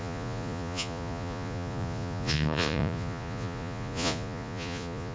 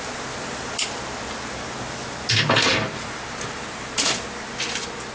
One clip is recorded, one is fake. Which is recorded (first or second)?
second